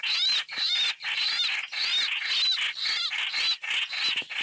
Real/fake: real